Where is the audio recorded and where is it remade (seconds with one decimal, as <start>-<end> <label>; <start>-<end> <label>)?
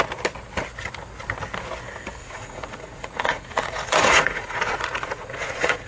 0.0-2.2 recorded; 2.2-5.9 remade